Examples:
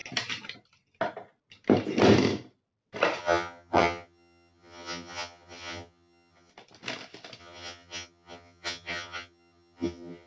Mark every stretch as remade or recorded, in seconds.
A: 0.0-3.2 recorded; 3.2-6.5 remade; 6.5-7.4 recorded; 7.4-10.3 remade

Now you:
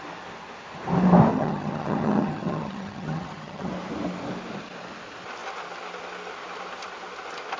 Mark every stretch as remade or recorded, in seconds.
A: 0.0-1.3 recorded; 1.3-3.7 remade; 3.7-7.6 recorded

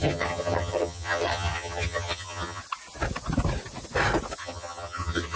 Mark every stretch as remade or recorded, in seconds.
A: 0.0-2.6 remade; 2.6-4.4 recorded; 4.4-5.4 remade

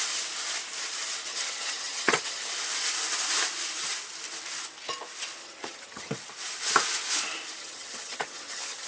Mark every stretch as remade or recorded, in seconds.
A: 0.0-1.3 recorded; 1.3-2.5 remade; 2.5-5.4 recorded; 5.4-6.1 remade; 6.1-7.6 recorded; 7.6-8.9 remade

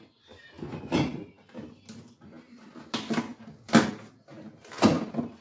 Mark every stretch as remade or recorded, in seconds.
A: 0.0-5.4 recorded